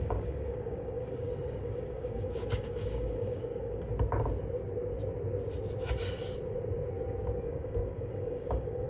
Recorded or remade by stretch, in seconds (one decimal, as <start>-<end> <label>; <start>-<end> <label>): 0.0-3.9 remade; 3.9-7.4 recorded; 7.4-8.9 remade